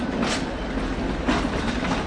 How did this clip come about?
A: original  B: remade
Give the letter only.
A